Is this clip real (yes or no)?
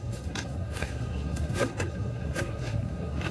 no